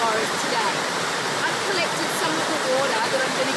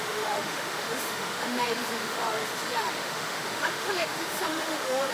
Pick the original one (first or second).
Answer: first